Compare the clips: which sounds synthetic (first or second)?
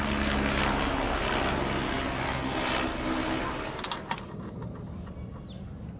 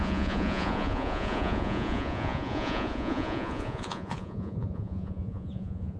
second